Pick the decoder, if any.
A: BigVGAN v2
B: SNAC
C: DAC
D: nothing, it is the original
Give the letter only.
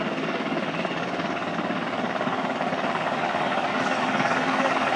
C